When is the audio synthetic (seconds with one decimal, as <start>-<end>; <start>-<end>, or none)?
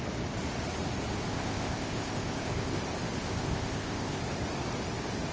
1.3-2.8; 3.2-4.2